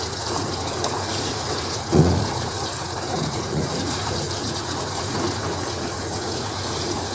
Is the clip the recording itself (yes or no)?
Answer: no